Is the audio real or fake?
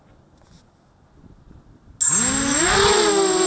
real